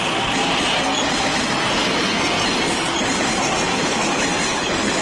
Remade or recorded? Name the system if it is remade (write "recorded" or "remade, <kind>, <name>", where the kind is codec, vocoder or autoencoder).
recorded